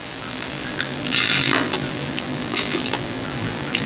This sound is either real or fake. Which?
fake